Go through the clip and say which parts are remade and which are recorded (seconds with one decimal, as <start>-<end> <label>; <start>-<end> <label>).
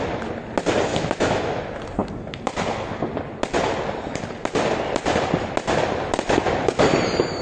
0.0-0.9 recorded; 0.9-1.6 remade; 1.6-7.4 recorded